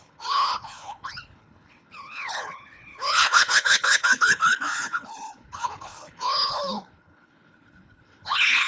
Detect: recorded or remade remade